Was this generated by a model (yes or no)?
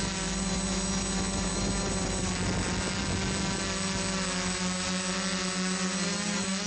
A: no